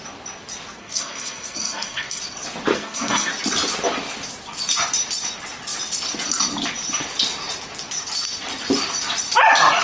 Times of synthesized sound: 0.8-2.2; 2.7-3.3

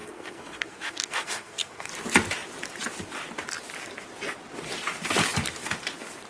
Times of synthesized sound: 0.0-1.9

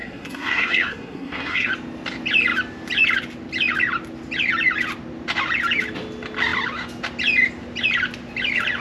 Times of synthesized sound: 0.0-1.7

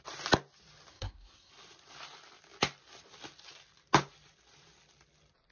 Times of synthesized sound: 0.9-1.5

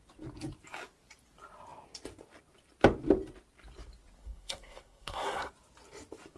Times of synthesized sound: 4.2-5.5

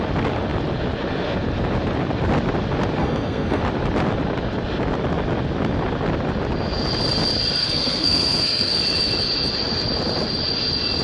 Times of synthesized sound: 3.0-3.6; 7.6-8.7